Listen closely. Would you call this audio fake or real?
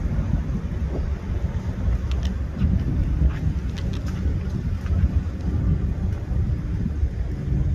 real